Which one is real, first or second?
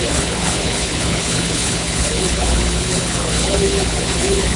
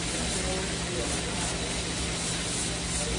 second